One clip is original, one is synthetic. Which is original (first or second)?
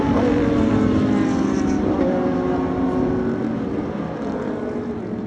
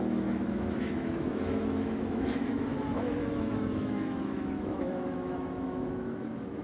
first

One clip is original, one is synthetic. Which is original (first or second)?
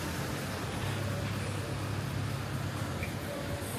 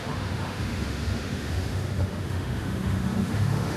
first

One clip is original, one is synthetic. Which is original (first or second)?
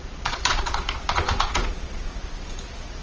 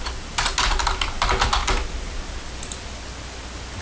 second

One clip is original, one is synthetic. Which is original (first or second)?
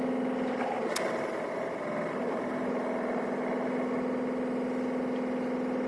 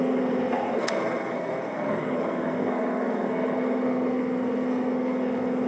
first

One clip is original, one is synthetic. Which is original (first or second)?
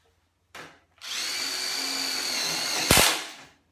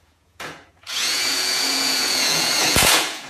first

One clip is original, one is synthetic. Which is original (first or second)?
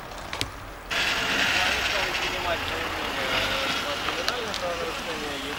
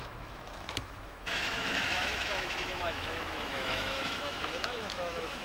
first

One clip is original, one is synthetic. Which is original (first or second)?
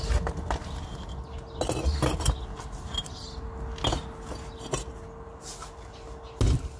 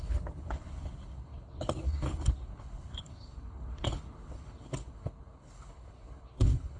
first